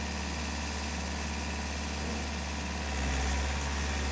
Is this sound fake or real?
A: real